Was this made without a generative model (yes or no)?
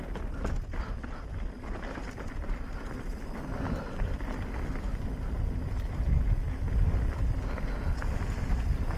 yes